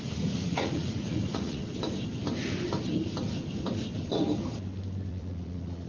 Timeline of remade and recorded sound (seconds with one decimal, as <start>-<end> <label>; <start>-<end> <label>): 0.0-1.6 remade; 1.6-5.1 recorded; 5.1-5.9 remade